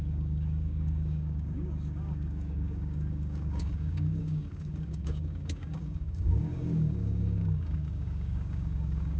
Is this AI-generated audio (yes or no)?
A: yes